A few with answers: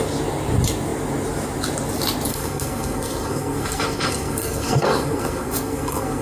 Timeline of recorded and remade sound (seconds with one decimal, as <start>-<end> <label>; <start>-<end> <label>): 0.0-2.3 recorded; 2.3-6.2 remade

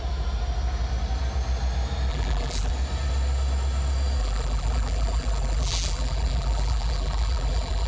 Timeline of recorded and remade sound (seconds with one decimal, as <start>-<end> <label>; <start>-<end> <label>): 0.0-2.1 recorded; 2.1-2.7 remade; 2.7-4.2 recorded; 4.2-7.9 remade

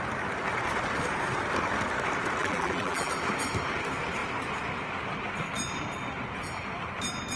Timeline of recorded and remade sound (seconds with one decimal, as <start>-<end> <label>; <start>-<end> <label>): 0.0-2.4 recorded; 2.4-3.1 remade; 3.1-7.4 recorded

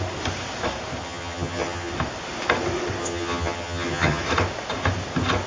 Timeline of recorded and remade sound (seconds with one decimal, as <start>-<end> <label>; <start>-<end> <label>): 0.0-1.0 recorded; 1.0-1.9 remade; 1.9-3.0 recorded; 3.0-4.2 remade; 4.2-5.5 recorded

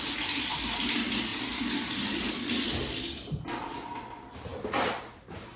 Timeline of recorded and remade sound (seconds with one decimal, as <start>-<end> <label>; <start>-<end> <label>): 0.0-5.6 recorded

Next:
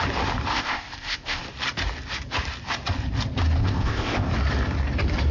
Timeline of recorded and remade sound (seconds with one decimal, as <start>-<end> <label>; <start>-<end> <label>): 0.0-0.5 recorded; 0.5-1.4 remade; 1.4-3.6 recorded; 3.6-4.3 remade; 4.3-5.3 recorded